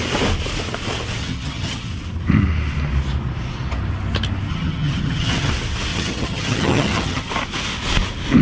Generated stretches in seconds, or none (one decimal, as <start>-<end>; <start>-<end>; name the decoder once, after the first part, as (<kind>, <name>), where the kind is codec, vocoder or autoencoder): 1.2-1.9 (vocoder, HiFi-GAN); 4.5-5.5; 5.9-7.3